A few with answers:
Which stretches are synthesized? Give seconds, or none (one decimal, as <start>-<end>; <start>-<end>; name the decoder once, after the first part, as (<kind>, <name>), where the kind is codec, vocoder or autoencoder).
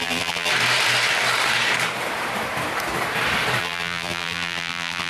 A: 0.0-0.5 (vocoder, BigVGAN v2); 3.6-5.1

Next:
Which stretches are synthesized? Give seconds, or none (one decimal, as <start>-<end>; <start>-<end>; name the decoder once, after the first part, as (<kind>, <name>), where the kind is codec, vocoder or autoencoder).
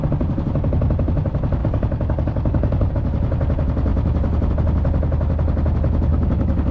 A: 1.6-2.9 (codec, DAC); 6.1-6.7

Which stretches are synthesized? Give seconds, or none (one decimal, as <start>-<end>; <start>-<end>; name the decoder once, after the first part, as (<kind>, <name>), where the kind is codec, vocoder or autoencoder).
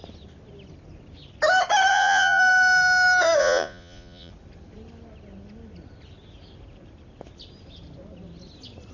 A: 1.9-2.4 (vocoder, Vocos); 3.4-4.3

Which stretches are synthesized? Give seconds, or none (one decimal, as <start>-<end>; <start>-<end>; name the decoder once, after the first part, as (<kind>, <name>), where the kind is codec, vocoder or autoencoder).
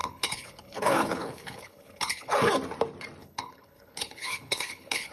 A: 0.0-2.5 (codec, HILCodec); 3.2-5.1